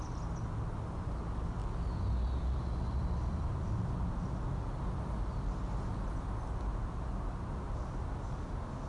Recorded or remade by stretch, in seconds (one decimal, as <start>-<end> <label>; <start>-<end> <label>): 0.0-8.9 recorded